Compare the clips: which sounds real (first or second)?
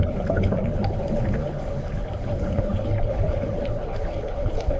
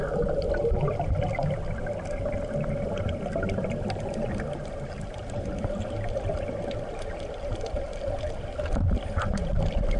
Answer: second